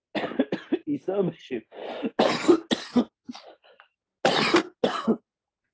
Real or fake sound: real